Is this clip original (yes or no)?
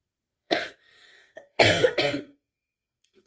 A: no